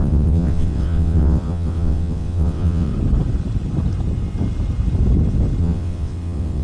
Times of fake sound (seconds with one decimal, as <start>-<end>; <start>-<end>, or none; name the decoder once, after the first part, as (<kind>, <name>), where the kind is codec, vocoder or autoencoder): 0.0-2.9 (vocoder, WaveNeXt); 5.6-6.6